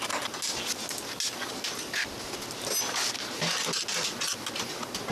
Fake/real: real